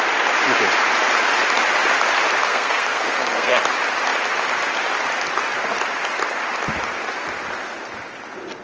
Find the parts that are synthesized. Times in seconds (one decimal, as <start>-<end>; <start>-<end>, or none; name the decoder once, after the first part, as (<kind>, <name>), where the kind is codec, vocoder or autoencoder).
2.5-3.6 (codec, SNAC)